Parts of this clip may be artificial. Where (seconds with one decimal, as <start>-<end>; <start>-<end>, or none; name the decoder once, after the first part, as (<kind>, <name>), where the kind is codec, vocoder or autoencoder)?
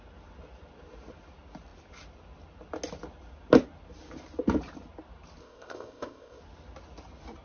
5.4-6.4 (codec, ZipCodec)